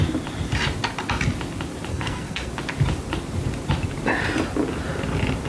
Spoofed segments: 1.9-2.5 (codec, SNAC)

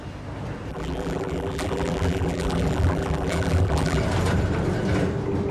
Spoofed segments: 0.7-4.0 (vocoder, BigVGAN v2)

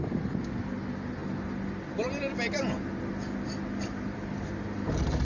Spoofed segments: none

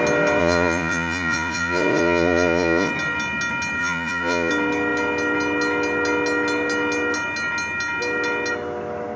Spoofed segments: 0.4-2.9 (vocoder, Vocos); 3.8-4.5

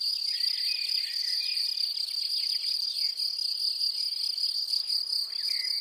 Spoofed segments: none

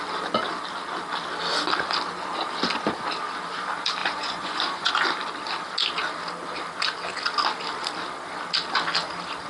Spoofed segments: 4.0-4.9 (vocoder, Vocos)

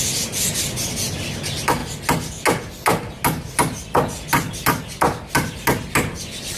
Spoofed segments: none